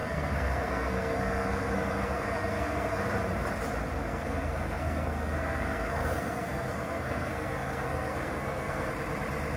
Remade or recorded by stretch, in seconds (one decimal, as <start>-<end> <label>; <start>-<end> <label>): 0.0-3.0 remade; 3.0-4.0 recorded; 4.0-8.9 remade; 8.9-9.6 recorded

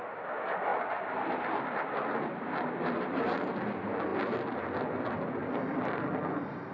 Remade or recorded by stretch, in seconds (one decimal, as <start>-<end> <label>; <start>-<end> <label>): 0.0-6.7 recorded

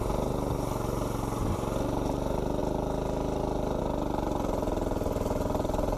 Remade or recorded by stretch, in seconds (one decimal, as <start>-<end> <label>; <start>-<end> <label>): 0.0-6.0 recorded

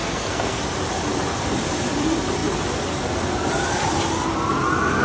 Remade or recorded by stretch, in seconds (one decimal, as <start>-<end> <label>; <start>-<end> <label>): 0.0-0.6 remade; 0.6-5.0 recorded

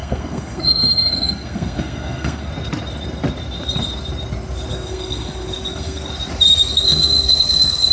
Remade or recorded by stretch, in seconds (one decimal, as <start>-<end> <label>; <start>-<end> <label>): 0.0-2.5 remade; 2.5-4.7 recorded; 4.7-6.1 remade; 6.1-6.5 recorded; 6.5-7.9 remade

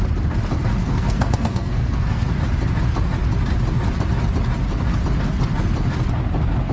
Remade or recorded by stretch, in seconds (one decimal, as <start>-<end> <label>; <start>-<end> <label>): 0.0-0.8 recorded; 0.8-2.3 remade; 2.3-6.7 recorded

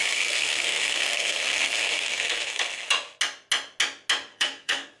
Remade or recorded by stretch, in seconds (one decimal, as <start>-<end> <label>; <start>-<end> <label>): 0.0-2.9 remade; 2.9-4.3 recorded; 4.3-5.0 remade